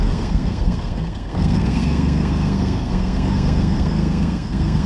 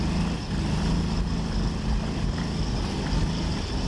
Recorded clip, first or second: second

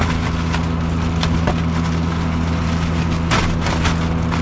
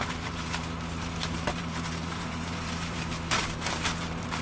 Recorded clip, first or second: first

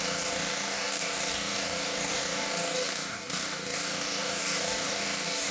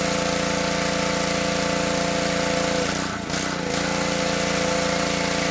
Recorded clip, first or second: second